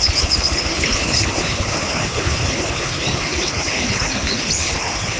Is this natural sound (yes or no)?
no